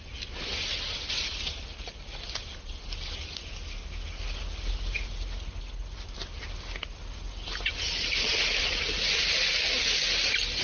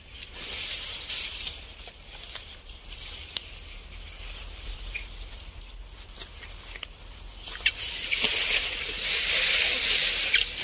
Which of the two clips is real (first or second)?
first